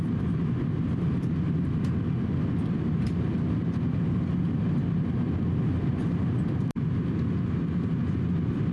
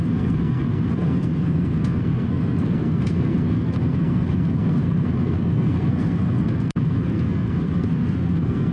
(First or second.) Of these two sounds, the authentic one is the first